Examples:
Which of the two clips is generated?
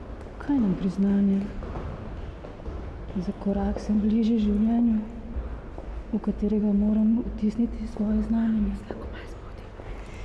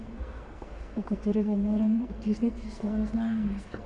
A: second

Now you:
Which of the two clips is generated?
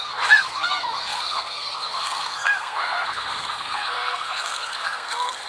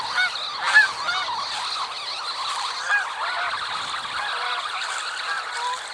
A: first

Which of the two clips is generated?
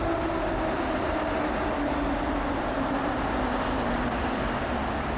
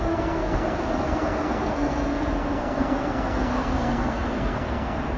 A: second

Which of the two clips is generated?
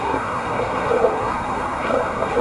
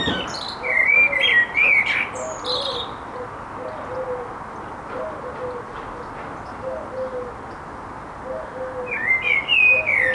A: first